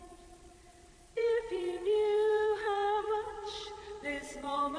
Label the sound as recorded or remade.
remade